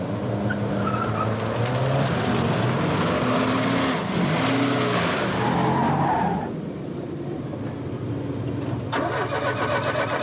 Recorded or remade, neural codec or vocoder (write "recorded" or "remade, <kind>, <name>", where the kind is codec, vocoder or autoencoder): recorded